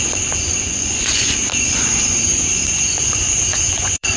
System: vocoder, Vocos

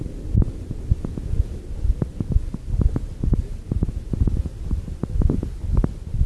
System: none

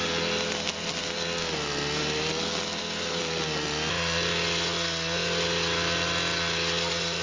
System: none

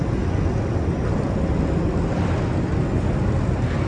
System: none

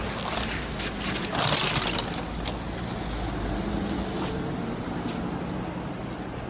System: none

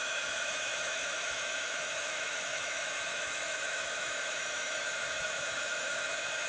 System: autoencoder, DAC-VAE